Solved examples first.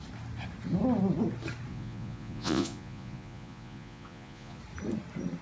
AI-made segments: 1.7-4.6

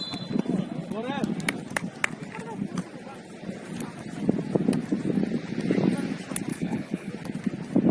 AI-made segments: 6.5-7.1

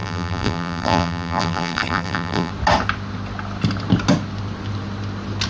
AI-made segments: 0.0-2.5

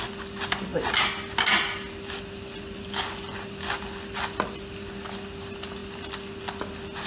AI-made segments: none